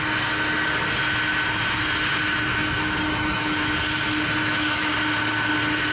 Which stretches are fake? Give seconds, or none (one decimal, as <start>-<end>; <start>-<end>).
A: 2.5-3.7; 4.4-4.9